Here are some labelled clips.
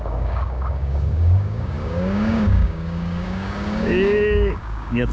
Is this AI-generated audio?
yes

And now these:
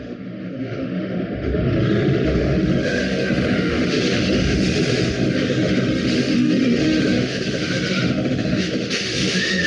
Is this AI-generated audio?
yes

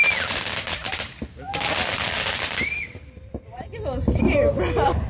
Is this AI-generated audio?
yes